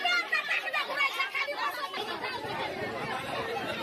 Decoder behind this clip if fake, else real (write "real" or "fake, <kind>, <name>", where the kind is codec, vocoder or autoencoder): fake, vocoder, BigVGAN v2